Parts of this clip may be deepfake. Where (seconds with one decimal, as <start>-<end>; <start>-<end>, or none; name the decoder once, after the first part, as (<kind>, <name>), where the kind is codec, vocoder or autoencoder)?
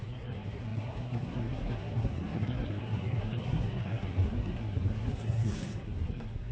0.0-6.5 (codec, SNAC)